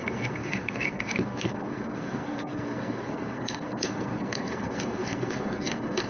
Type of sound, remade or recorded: remade